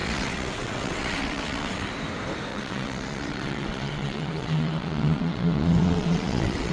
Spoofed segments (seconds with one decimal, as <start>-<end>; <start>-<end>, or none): 0.0-1.9; 2.5-6.7